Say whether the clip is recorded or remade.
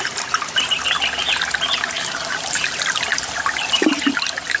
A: recorded